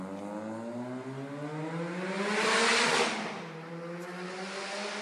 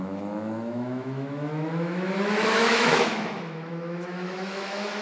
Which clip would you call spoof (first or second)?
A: second